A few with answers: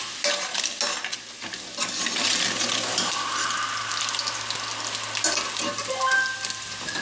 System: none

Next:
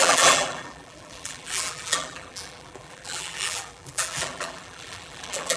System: vocoder, BigVGAN v2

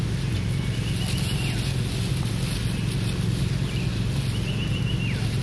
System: none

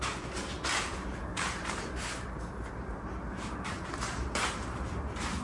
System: vocoder, BigVGAN v2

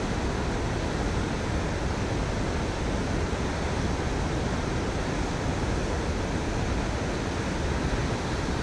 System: none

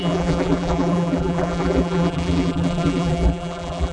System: vocoder, BigVGAN v2